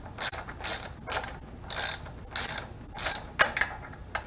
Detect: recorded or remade recorded